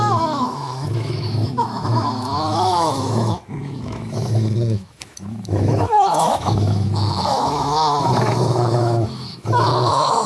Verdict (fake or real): fake